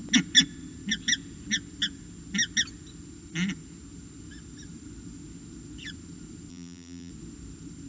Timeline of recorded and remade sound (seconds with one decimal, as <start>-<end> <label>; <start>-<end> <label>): 0.0-6.5 recorded; 6.5-7.1 remade; 7.1-7.9 recorded